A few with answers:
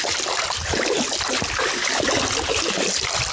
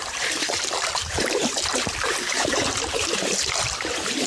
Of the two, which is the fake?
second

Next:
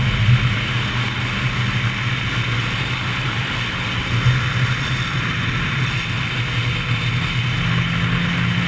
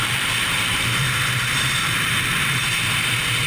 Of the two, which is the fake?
second